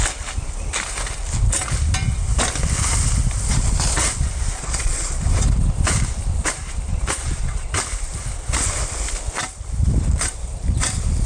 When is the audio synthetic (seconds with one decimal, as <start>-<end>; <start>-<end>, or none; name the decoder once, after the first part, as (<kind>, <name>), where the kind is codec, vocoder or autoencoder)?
4.6-5.2 (vocoder, Vocos); 6.9-7.7